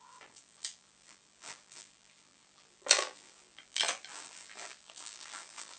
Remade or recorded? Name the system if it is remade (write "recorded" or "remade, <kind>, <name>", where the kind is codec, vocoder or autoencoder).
remade, vocoder, BigVGAN v2